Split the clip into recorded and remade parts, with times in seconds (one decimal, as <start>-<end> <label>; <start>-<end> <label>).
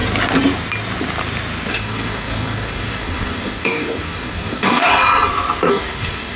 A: 0.0-1.7 recorded; 1.7-4.9 remade; 4.9-5.7 recorded; 5.7-6.4 remade